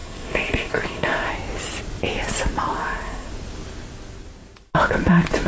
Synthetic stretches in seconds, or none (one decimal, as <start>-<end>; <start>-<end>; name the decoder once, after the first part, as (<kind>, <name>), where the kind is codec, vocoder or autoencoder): 0.0-1.3 (codec, SNAC); 2.7-3.3